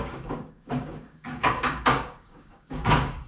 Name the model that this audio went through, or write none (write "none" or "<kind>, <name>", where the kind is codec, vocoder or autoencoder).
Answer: codec, DAC